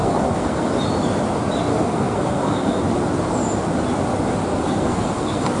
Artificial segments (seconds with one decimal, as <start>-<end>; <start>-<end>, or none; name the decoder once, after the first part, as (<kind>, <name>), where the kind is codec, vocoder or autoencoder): 0.0-0.7 (codec, SNAC); 1.7-2.8; 4.5-5.6